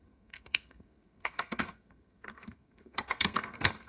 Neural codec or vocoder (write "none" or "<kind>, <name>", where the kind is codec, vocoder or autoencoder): codec, SNAC